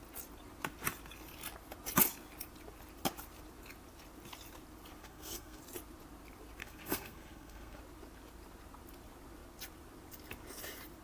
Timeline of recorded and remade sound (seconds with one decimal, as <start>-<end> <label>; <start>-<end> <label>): 0.0-5.0 recorded; 5.0-5.6 remade; 5.6-6.6 recorded; 6.6-7.8 remade; 7.8-11.0 recorded